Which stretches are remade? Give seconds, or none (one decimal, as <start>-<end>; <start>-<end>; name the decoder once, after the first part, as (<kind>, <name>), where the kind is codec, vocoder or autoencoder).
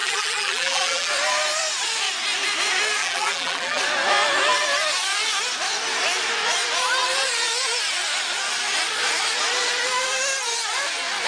0.0-1.1 (vocoder, BigVGAN v2); 3.0-3.8